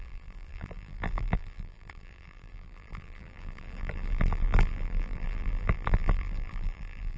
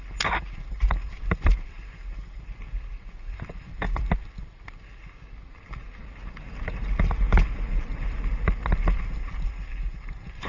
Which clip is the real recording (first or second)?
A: second